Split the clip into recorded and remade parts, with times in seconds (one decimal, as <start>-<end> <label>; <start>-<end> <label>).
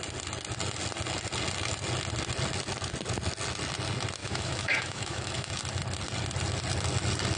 0.0-4.2 recorded; 4.2-5.5 remade; 5.5-7.4 recorded